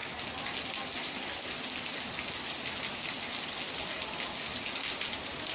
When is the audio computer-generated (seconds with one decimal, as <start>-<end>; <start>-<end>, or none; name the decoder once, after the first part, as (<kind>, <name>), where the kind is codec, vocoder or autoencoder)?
none